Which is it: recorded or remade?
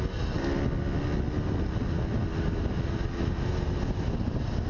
recorded